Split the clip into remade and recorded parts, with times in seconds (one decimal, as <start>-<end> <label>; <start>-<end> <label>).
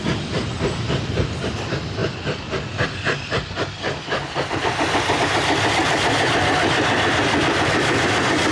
0.0-8.5 recorded